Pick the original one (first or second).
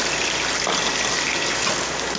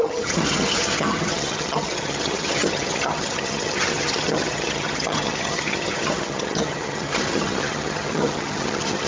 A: first